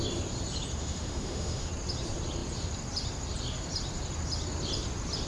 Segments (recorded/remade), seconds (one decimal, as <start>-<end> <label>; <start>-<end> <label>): 0.0-0.8 recorded; 0.8-1.7 remade; 1.7-5.3 recorded